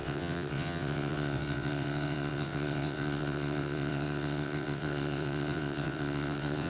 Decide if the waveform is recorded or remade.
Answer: remade